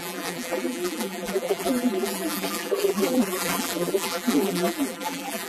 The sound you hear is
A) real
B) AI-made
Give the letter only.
B